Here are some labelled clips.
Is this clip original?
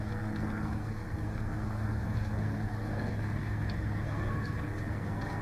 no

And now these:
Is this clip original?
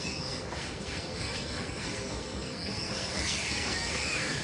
no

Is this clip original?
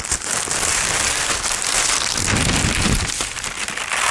yes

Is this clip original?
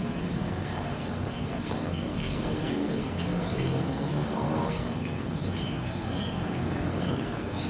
no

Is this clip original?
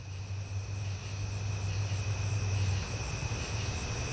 yes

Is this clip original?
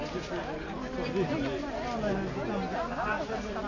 yes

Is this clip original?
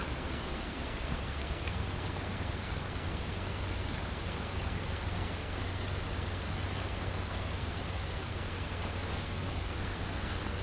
no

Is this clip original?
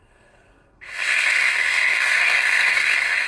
no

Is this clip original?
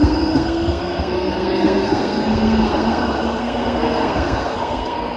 no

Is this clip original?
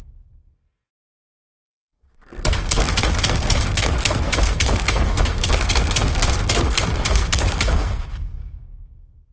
no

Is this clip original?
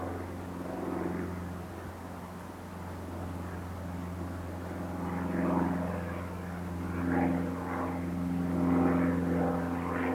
yes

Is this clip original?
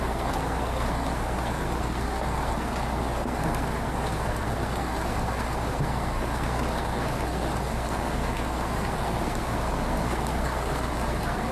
no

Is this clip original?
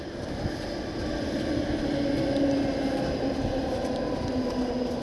yes